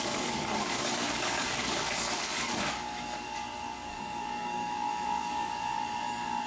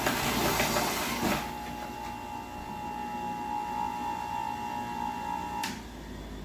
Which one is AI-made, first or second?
first